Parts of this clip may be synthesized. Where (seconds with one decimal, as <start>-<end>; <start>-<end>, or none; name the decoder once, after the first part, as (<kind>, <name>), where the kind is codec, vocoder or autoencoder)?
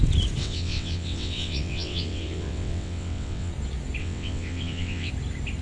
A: 0.4-3.5 (vocoder, WaveNeXt); 4.0-5.1